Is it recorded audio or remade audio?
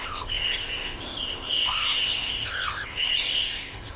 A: remade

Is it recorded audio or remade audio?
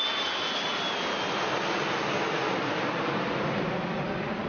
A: recorded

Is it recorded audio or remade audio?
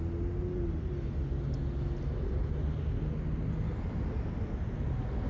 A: recorded